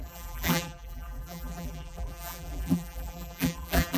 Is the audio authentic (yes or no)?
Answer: no